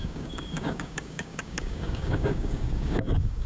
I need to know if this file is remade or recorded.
remade